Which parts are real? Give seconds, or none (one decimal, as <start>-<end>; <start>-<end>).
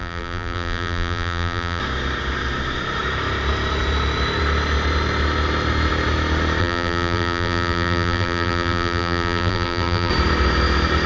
1.8-6.6; 10.1-11.1